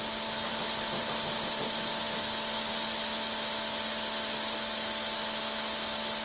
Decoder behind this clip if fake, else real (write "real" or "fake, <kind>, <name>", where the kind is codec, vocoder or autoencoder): real